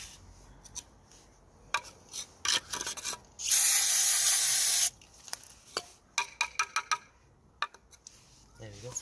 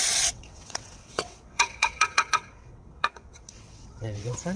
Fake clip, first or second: second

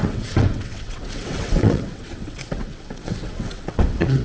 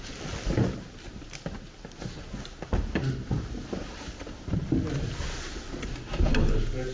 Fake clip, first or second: first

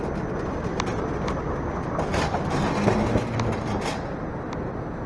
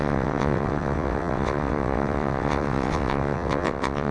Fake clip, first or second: second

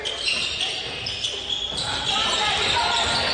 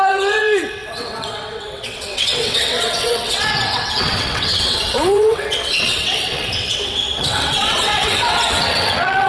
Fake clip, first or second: second